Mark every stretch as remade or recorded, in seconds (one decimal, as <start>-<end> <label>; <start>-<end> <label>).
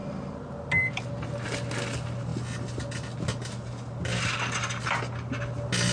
0.0-5.9 recorded